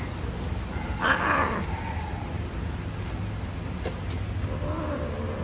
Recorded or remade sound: recorded